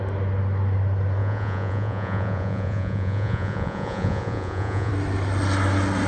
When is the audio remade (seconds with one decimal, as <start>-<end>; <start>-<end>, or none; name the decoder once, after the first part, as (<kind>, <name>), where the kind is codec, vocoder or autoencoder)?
1.2-4.9 (vocoder, Vocos)